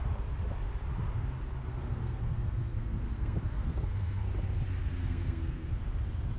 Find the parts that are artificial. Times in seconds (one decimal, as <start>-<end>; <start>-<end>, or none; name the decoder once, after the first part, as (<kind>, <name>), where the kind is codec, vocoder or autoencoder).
1.6-4.3 (codec, SNAC); 4.8-5.8